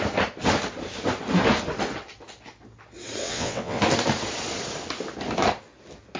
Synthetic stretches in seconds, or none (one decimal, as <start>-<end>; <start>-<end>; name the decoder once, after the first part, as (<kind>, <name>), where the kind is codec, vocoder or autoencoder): 3.2-3.8 (vocoder, WaveNeXt)